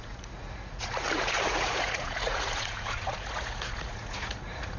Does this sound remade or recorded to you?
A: remade